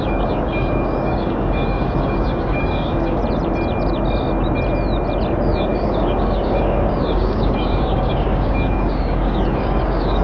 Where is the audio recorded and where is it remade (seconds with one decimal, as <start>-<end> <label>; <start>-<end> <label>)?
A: 0.0-3.2 remade; 3.2-5.6 recorded; 5.6-10.2 remade